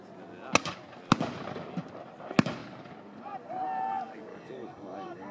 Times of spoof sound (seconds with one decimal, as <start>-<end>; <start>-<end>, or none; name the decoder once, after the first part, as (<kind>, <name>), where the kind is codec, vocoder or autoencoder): 4.3-5.3 (codec, DAC)